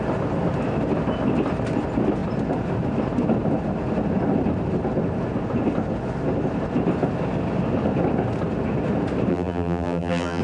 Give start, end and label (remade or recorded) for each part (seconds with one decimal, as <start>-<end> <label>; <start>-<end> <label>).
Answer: 0.0-9.3 recorded; 9.3-10.4 remade